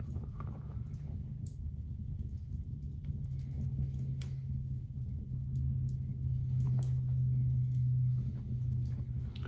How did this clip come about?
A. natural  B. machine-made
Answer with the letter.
B